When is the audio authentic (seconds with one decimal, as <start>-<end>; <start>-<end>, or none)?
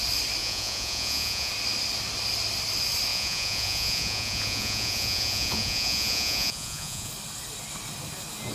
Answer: 0.0-0.4; 1.5-3.1; 7.1-8.5